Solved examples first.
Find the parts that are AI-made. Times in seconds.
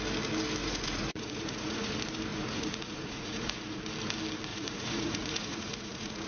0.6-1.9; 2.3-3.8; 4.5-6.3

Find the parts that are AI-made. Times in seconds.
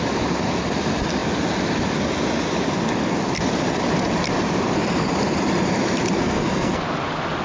6.2-6.8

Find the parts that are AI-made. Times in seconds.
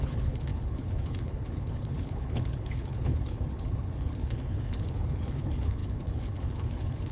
0.0-7.1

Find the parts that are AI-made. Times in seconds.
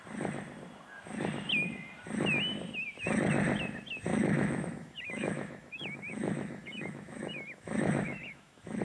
4.1-8.8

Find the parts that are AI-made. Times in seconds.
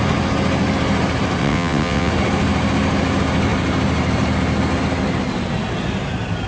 1.4-2.1